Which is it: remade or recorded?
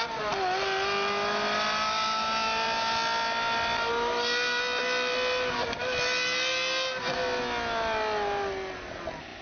recorded